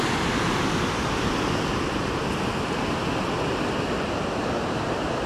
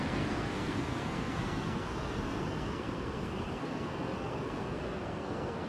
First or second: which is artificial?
second